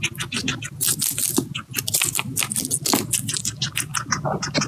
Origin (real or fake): real